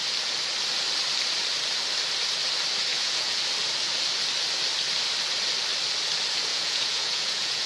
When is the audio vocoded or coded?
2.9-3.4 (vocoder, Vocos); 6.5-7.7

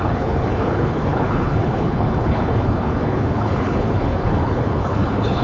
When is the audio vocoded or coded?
0.0-5.4 (codec, HILCodec)

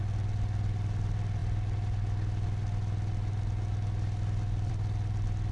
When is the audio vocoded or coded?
none

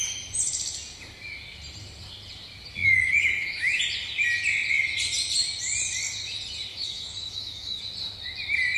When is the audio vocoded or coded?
2.8-3.8 (autoencoder, DAC-VAE); 6.7-7.8

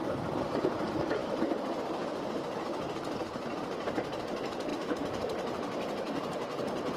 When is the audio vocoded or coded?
1.2-3.6 (vocoder, BigVGAN v2); 4.7-7.0

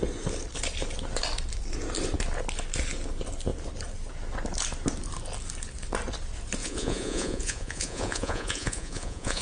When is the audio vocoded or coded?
6.6-9.4 (vocoder, Vocos)

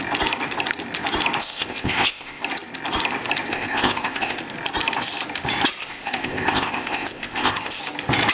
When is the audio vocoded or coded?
1.4-2.4 (codec, ZipCodec); 3.5-4.4; 5.8-7.8